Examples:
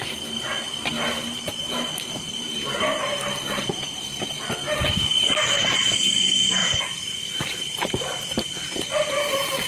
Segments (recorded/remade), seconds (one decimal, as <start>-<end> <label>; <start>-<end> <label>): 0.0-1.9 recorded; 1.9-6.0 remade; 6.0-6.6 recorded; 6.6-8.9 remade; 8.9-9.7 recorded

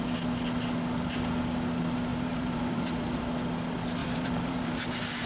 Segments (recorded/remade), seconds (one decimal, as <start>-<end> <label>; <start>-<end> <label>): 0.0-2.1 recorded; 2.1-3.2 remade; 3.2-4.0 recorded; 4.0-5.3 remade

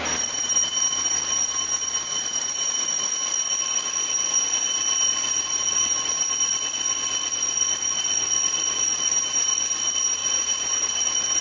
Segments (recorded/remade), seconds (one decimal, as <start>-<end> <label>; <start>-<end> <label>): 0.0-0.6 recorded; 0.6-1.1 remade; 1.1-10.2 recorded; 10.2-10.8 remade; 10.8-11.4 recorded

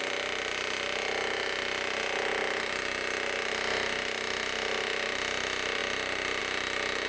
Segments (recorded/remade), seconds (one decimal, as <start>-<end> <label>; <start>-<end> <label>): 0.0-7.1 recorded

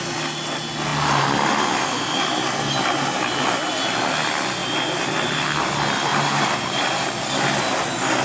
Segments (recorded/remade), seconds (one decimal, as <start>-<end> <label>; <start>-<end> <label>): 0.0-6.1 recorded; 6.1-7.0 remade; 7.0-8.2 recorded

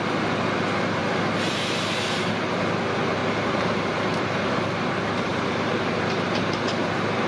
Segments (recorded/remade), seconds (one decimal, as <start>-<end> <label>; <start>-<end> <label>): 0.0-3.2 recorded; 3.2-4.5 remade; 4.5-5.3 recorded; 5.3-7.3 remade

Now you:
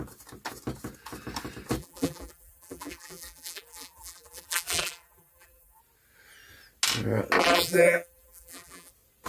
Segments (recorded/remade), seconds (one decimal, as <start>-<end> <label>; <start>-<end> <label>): 0.0-1.8 recorded; 1.8-5.8 remade; 5.8-7.4 recorded; 7.4-8.9 remade; 8.9-9.3 recorded

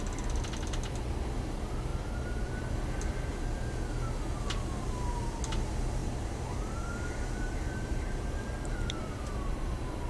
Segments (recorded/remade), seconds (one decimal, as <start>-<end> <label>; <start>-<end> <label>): 0.0-1.9 recorded; 1.9-2.6 remade; 2.6-6.0 recorded; 6.0-8.4 remade; 8.4-9.0 recorded; 9.0-10.1 remade